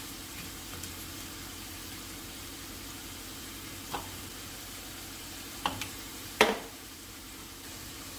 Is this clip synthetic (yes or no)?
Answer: yes